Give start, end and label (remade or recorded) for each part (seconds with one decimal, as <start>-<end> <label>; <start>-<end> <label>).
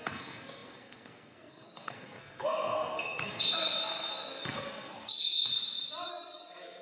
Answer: 0.0-5.5 remade; 5.5-6.1 recorded; 6.1-6.8 remade